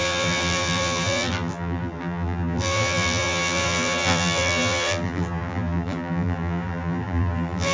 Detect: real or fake fake